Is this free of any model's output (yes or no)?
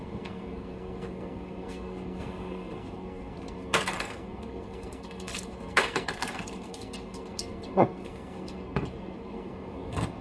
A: no